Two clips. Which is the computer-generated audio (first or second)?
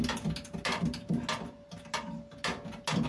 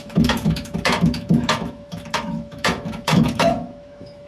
second